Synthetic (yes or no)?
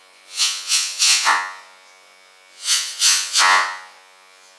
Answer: yes